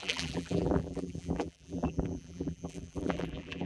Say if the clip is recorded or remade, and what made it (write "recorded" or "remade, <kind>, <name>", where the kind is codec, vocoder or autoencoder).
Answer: remade, vocoder, BigVGAN v2